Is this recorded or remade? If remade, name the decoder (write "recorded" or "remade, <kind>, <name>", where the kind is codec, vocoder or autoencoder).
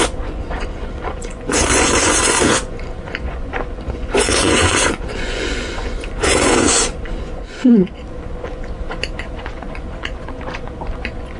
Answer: remade, vocoder, Vocos